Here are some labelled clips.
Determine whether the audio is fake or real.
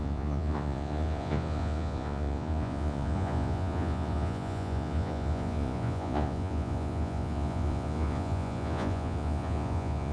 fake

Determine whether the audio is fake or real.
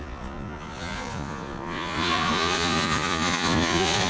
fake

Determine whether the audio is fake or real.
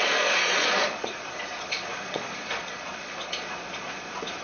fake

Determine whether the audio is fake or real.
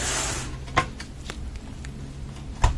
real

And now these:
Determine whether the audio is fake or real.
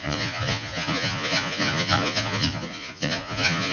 fake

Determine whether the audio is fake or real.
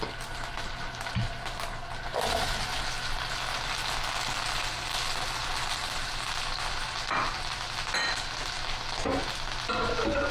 real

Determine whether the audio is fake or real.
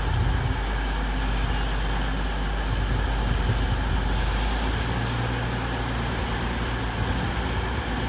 real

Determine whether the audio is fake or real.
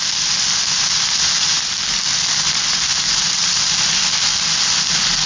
real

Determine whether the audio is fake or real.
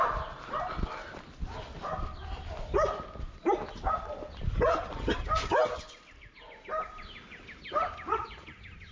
real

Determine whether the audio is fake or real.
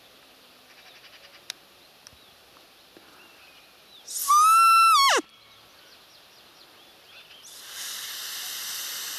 real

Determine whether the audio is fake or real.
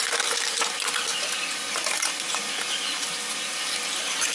real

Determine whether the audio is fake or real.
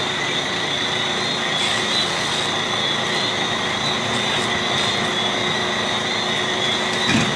real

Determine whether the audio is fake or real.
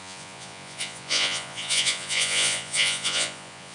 fake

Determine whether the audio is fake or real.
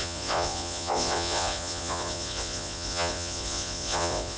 fake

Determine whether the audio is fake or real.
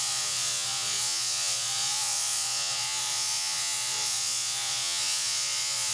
fake